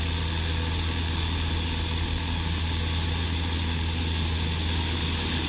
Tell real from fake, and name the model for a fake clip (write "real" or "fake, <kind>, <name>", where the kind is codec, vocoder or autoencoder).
real